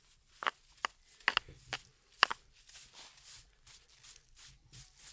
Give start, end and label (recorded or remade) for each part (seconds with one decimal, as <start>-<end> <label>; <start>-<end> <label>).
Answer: 0.0-5.1 recorded